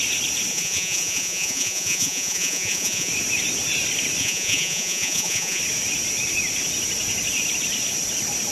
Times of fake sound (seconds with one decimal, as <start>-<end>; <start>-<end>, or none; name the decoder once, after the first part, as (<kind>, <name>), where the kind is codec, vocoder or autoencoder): 0.5-3.1 (vocoder, Vocos); 4.2-5.6